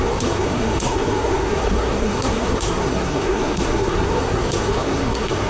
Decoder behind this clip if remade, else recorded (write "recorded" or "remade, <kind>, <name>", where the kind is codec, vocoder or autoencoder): remade, codec, SNAC